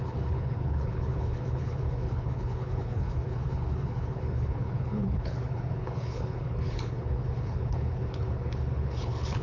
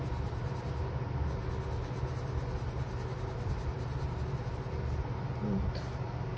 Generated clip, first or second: first